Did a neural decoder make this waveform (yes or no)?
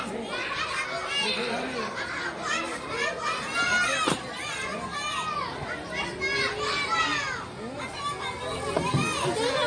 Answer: no